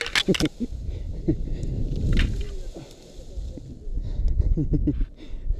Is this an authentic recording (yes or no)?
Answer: yes